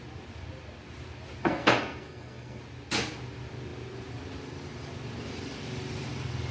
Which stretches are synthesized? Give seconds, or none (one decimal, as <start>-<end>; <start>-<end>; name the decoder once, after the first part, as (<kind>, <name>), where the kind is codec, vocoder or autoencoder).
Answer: 1.4-2.6 (codec, SNAC)